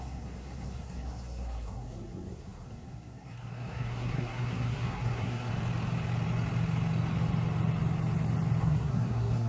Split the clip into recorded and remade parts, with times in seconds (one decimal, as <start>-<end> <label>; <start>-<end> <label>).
0.0-5.5 remade; 5.5-8.6 recorded; 8.6-9.5 remade